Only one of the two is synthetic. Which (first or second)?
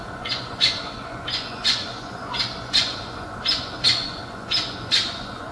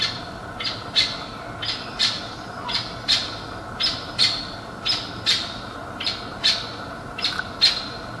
first